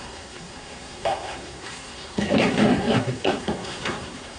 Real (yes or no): no